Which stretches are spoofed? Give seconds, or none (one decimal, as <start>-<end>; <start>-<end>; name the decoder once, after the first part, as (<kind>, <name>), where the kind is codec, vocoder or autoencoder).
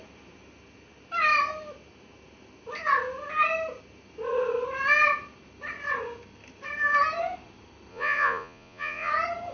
7.9-9.1 (vocoder, Vocos)